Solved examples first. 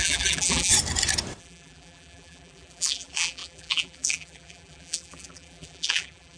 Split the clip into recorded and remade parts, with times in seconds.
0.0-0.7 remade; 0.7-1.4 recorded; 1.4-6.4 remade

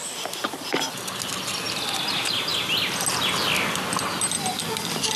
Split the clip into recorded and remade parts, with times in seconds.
0.0-5.2 recorded